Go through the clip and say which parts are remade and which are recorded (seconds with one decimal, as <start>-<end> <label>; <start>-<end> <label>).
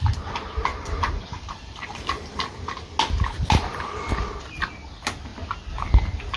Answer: 0.0-0.7 recorded; 0.7-2.5 remade; 2.5-6.4 recorded